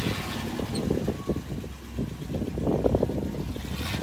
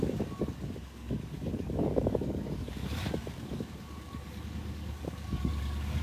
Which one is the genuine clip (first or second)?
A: first